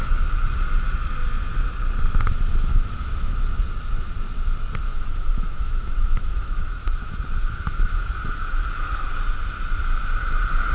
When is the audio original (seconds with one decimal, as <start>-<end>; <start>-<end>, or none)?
0.0-2.7; 3.4-4.9; 8.2-10.7